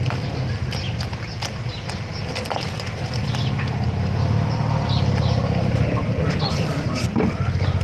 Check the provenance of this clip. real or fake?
real